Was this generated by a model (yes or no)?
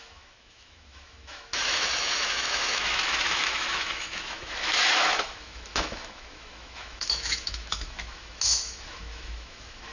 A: yes